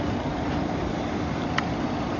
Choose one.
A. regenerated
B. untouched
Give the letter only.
B